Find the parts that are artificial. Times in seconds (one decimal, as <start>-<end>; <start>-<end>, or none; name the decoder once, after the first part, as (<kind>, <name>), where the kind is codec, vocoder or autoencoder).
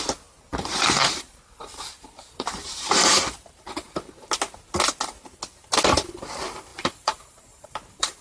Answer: 0.5-4.3 (vocoder, BigVGAN v2); 6.7-8.2